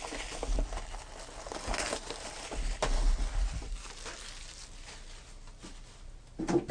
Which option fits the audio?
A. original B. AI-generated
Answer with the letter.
A